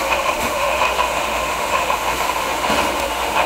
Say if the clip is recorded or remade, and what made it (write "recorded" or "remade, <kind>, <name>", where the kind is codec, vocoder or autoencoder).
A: remade, autoencoder, DAC-VAE